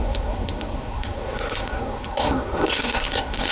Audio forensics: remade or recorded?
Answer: remade